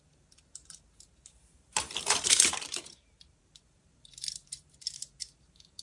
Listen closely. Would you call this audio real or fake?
fake